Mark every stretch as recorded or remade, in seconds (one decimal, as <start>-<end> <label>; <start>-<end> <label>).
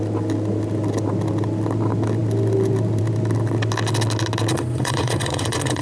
0.0-4.5 recorded; 4.5-5.8 remade